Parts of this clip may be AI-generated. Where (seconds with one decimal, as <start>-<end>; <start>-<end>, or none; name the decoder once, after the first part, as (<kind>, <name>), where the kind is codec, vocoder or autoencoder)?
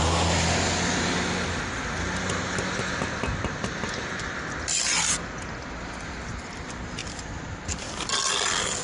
none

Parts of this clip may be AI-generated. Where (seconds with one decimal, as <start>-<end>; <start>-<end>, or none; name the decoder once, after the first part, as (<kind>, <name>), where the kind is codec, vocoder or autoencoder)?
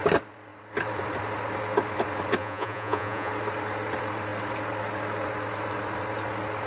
2.4-3.3 (vocoder, Vocos)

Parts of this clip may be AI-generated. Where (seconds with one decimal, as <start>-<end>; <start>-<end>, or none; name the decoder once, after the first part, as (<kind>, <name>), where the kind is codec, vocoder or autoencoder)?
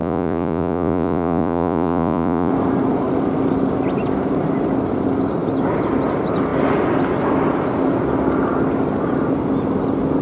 0.0-2.5 (vocoder, Vocos)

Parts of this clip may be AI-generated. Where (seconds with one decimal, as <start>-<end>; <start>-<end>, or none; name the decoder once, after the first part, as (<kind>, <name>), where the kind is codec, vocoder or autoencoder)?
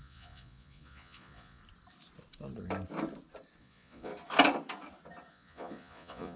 0.0-1.6 (vocoder, Vocos); 3.6-4.1; 5.3-6.4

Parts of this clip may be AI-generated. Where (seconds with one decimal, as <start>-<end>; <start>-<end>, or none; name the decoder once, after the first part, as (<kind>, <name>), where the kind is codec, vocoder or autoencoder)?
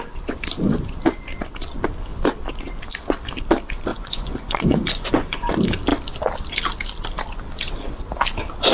3.9-5.5 (vocoder, Vocos)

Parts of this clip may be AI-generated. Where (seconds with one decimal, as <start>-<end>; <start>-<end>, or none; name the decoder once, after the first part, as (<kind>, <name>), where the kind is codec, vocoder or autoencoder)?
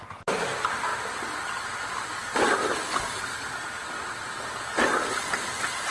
none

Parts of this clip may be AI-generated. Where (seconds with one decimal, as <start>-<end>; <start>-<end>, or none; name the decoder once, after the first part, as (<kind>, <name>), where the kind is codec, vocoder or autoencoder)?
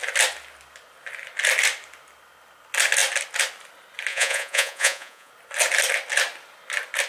4.1-5.3 (vocoder, Vocos)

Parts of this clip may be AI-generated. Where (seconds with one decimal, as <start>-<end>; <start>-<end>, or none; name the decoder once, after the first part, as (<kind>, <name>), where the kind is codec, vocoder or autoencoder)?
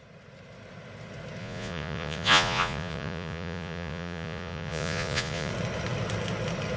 1.4-5.5 (vocoder, Vocos)